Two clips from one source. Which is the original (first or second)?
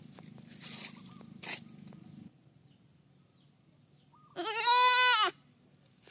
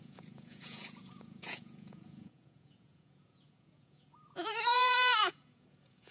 first